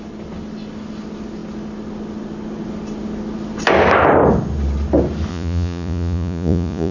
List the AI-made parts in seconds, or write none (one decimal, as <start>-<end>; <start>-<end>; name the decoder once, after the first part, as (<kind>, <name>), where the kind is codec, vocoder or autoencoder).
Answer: 5.3-6.9 (vocoder, Vocos)